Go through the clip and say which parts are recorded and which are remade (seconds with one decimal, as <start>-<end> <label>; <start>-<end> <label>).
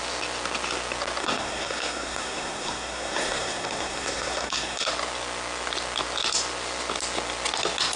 0.0-1.2 recorded; 1.2-4.9 remade; 4.9-8.0 recorded